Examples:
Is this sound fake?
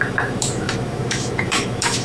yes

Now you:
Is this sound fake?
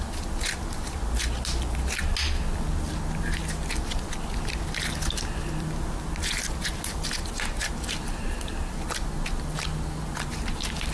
no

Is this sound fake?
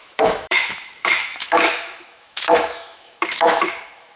yes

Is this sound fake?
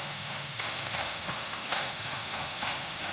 yes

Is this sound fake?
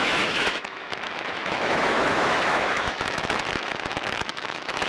yes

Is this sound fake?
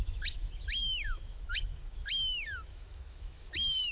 yes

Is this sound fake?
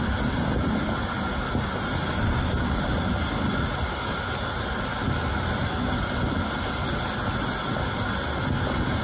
no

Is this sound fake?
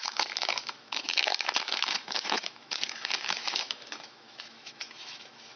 yes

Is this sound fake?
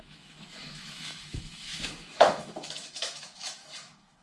yes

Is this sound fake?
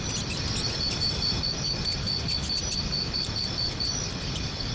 no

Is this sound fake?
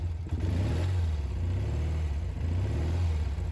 no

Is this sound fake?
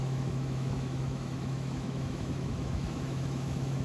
yes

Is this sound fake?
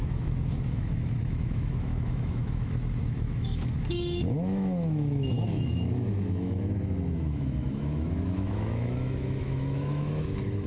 yes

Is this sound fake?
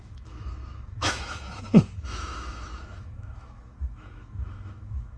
yes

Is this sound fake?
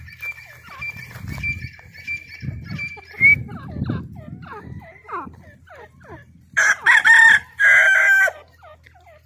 no